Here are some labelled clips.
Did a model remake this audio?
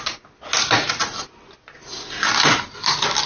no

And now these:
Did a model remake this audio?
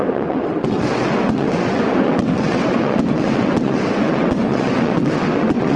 yes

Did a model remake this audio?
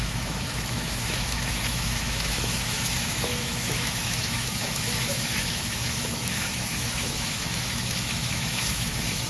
yes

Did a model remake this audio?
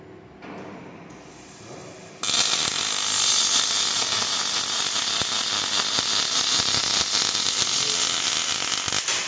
no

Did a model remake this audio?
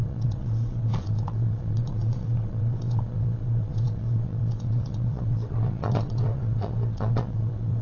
yes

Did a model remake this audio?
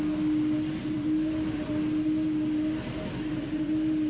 no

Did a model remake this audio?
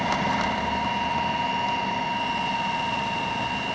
no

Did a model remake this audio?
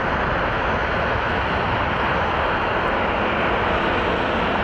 no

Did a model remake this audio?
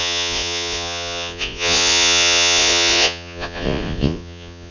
yes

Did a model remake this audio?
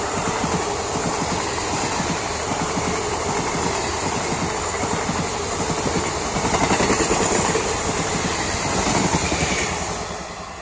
no